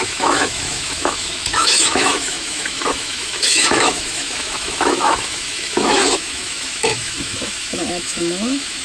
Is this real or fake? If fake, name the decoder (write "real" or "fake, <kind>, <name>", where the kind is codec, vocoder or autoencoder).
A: fake, autoencoder, DAC-VAE